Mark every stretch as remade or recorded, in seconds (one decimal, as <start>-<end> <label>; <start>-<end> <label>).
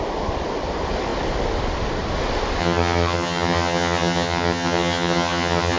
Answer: 0.0-2.6 recorded; 2.6-5.8 remade